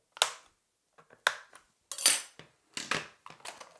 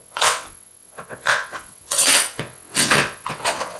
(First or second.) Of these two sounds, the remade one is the second